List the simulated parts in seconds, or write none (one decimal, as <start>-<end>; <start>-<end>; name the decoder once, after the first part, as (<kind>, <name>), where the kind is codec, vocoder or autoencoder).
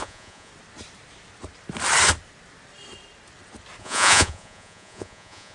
0.0-0.5 (vocoder, Vocos); 3.8-5.5